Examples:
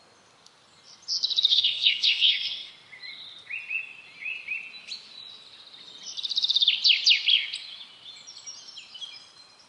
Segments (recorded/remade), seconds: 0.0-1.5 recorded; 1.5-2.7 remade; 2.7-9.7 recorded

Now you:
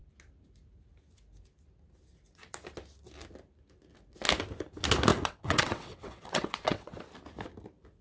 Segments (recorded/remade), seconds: 0.0-5.1 recorded; 5.1-7.0 remade; 7.0-8.0 recorded

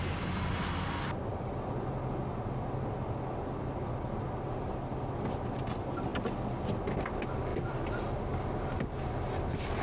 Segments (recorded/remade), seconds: 0.0-9.8 recorded

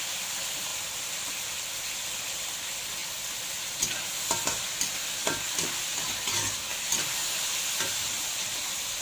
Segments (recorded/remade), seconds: 0.0-0.7 recorded; 0.7-1.5 remade; 1.5-6.7 recorded; 6.7-7.3 remade; 7.3-9.0 recorded